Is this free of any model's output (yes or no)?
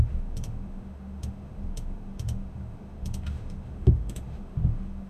no